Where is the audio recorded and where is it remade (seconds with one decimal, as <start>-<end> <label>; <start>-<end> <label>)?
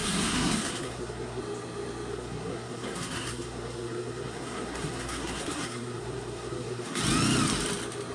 0.0-1.4 remade; 1.4-2.1 recorded; 2.1-7.0 remade; 7.0-8.1 recorded